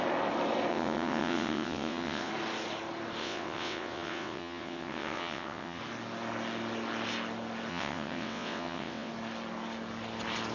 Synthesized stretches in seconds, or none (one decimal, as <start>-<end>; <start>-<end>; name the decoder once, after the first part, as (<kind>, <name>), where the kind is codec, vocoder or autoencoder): 0.7-2.3 (vocoder, WaveNeXt); 3.2-5.8; 7.7-9.1